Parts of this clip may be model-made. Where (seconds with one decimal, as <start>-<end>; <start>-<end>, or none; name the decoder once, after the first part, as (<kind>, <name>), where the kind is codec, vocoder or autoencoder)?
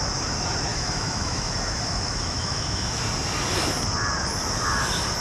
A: 0.7-3.0 (autoencoder, DAC-VAE)